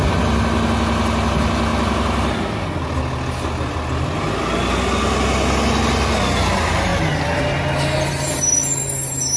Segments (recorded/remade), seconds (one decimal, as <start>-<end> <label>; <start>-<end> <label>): 0.0-9.4 recorded